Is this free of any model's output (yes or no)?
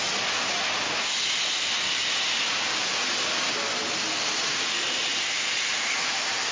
yes